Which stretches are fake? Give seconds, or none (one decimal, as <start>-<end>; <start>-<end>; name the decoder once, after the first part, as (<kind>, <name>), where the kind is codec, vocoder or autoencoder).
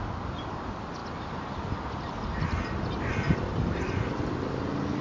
none